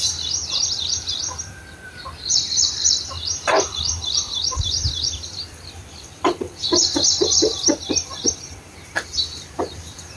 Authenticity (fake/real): fake